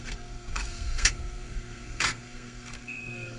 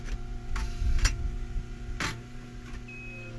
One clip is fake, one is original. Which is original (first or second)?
second